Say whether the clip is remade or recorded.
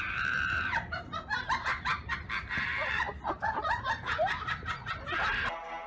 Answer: remade